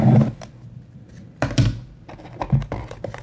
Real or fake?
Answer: real